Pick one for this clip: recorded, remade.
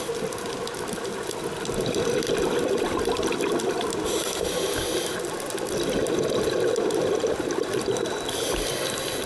recorded